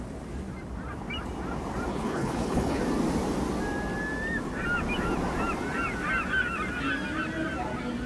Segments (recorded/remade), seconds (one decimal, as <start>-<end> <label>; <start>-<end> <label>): 0.0-1.9 recorded; 1.9-2.8 remade; 2.8-8.1 recorded